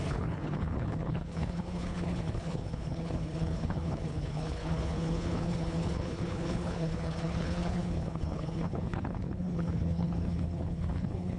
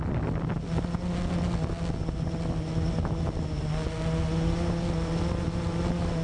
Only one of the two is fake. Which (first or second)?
first